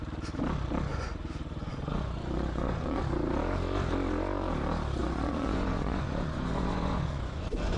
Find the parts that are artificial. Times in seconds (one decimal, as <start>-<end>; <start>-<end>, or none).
0.9-3.0; 5.0-7.8

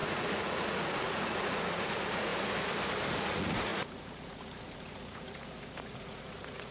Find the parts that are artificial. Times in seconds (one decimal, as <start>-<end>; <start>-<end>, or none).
0.0-2.3; 3.1-6.7

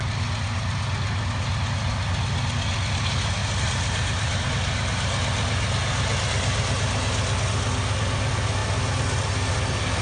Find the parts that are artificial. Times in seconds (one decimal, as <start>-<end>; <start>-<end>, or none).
3.4-4.5

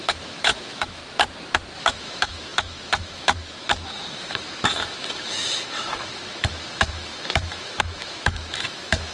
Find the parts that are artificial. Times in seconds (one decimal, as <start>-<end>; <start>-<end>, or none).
0.0-1.0; 1.8-9.1

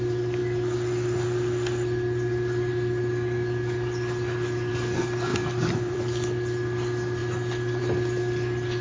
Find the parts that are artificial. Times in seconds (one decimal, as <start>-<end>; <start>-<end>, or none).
5.3-6.0

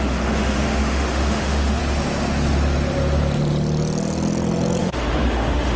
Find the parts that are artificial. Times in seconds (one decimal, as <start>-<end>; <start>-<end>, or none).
0.0-1.8; 4.8-5.8

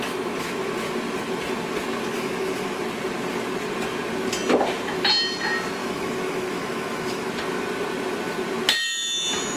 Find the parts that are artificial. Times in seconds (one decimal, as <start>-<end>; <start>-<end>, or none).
2.1-2.8; 5.8-7.3

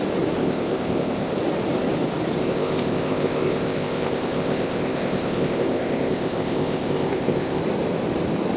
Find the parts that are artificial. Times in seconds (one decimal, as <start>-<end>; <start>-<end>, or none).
0.4-1.3; 2.4-7.6